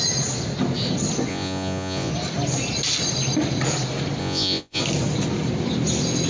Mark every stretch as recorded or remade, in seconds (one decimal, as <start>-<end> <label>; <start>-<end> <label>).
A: 0.0-1.3 recorded; 1.3-2.1 remade; 2.1-4.2 recorded; 4.2-4.8 remade; 4.8-6.3 recorded